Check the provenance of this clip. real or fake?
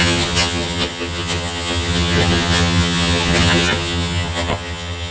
fake